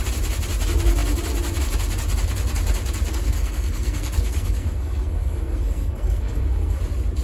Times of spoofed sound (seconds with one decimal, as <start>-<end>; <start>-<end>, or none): 3.1-6.8